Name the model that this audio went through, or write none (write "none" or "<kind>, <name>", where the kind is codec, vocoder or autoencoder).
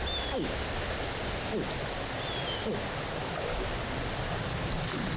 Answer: none